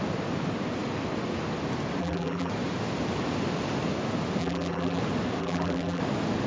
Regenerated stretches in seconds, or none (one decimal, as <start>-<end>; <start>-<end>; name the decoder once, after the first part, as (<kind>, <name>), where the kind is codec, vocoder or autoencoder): 2.0-2.5 (vocoder, BigVGAN v2); 4.4-5.0; 5.4-6.0

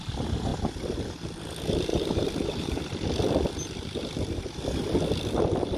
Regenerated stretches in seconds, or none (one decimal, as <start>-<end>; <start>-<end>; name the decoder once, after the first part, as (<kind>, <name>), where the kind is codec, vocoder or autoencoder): 1.9-2.8 (vocoder, BigVGAN v2)

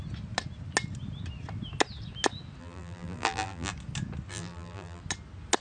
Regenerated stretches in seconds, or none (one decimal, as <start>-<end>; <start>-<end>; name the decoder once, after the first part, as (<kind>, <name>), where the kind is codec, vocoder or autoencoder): 2.6-3.7 (vocoder, BigVGAN v2); 4.3-5.0

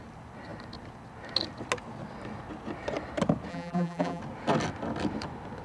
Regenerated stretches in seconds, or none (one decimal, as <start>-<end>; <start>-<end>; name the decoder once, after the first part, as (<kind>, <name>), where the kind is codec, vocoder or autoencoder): 3.5-4.2 (vocoder, BigVGAN v2)

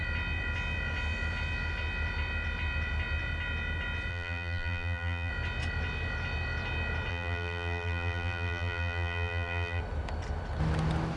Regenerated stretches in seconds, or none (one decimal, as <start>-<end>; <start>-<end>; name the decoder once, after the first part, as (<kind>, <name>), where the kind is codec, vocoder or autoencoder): 4.1-5.3 (vocoder, BigVGAN v2); 7.1-9.8

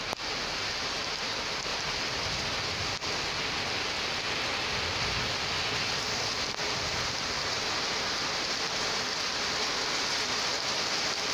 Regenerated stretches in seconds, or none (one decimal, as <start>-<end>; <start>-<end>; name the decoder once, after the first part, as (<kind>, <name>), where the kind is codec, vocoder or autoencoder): 1.7-2.3 (vocoder, BigVGAN v2)